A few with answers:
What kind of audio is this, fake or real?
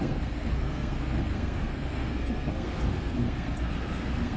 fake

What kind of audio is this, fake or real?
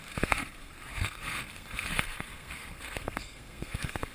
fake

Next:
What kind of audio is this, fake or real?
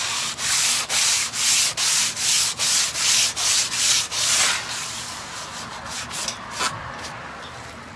real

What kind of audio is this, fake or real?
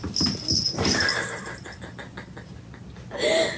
real